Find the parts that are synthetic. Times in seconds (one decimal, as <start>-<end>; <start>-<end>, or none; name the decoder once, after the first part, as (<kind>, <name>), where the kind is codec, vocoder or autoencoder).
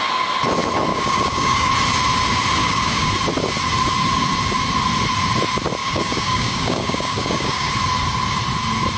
0.9-1.7 (codec, DAC); 2.6-3.1; 5.8-7.7